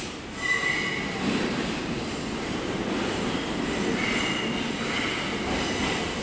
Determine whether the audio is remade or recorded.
recorded